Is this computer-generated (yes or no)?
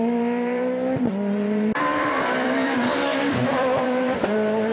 yes